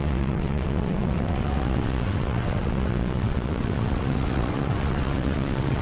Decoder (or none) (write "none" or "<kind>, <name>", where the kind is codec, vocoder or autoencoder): vocoder, WaveNeXt